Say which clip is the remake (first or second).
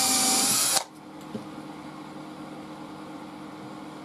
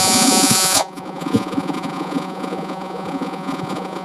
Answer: second